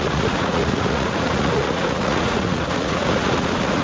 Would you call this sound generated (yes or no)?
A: yes